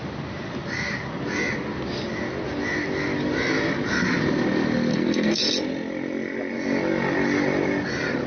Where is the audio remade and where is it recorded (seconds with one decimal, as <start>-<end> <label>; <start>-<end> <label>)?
0.0-4.9 recorded; 4.9-5.4 remade; 5.4-8.3 recorded